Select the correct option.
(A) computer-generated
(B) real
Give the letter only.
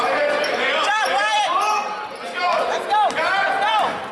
B